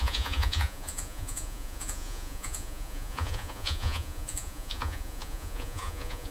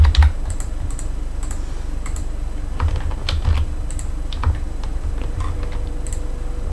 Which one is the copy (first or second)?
first